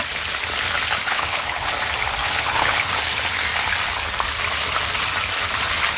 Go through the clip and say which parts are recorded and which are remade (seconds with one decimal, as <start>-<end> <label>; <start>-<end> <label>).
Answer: 0.0-1.0 recorded; 1.0-1.7 remade; 1.7-2.2 recorded; 2.2-2.9 remade; 2.9-6.0 recorded